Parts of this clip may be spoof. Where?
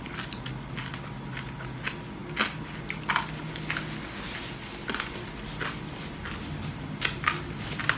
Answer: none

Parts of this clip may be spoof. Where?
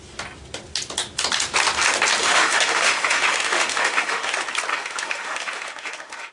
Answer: 2.2-4.3 (autoencoder, DAC-VAE); 4.7-6.3